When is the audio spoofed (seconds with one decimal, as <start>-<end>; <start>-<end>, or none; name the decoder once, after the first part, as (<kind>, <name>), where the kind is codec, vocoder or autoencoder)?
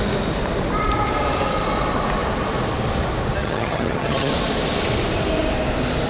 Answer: 3.4-4.3 (vocoder, HiFi-GAN)